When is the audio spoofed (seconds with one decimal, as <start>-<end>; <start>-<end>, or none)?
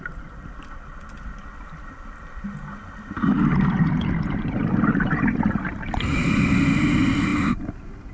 none